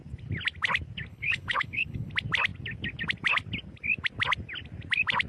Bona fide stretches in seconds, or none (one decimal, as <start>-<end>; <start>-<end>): 0.0-1.1; 2.1-5.3